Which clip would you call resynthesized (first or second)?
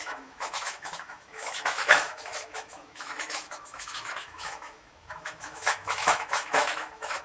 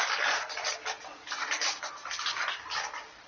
first